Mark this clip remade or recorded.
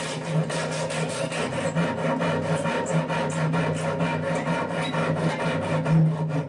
recorded